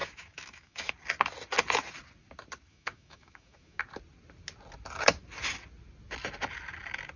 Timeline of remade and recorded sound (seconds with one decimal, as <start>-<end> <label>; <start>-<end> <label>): 0.0-0.9 remade; 0.9-2.7 recorded; 2.7-3.8 remade; 3.8-7.2 recorded